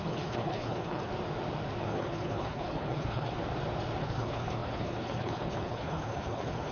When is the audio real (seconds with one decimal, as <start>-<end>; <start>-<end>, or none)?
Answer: 1.1-1.8; 3.4-4.0